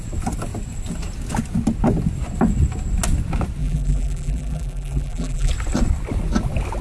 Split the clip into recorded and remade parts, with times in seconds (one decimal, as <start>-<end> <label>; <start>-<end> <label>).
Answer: 0.0-3.6 recorded; 3.6-5.5 remade; 5.5-6.8 recorded